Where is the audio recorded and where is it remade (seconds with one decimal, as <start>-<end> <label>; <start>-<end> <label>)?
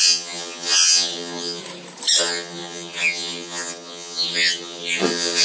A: 0.0-1.6 remade; 1.6-2.2 recorded; 2.2-5.4 remade